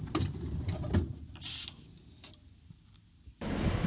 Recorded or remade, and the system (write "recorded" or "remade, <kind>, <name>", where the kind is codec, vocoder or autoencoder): recorded